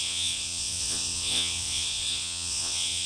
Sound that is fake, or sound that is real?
fake